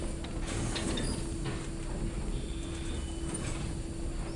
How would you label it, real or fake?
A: real